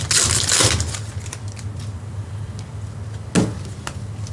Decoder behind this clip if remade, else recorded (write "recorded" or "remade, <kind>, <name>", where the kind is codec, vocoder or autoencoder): recorded